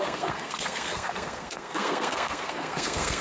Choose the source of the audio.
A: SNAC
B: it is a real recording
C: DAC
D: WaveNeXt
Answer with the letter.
A